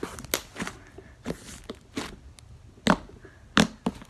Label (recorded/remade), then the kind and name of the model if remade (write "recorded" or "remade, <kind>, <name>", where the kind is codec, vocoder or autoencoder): recorded